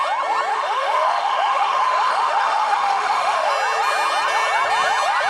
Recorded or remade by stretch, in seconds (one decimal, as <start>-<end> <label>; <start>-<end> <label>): 0.0-0.5 recorded; 0.5-3.5 remade; 3.5-5.3 recorded